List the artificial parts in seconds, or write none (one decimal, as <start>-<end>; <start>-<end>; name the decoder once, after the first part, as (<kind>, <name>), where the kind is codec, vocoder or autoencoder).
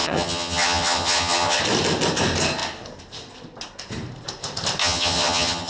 0.0-1.6 (vocoder, HiFi-GAN); 4.8-5.7